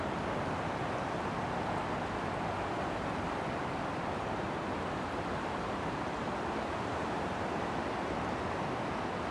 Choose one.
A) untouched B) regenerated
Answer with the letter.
A